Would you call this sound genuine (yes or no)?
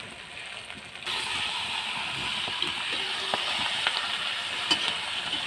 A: yes